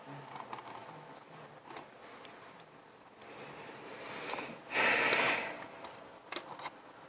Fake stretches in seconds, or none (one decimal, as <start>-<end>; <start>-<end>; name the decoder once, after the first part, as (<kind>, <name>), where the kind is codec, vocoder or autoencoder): none